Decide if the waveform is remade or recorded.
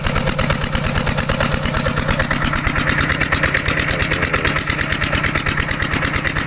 recorded